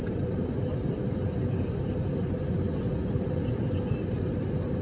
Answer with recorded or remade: recorded